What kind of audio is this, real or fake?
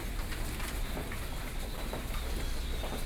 real